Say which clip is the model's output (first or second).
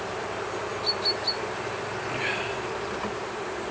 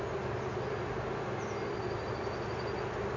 first